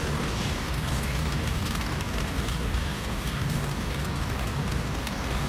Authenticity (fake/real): fake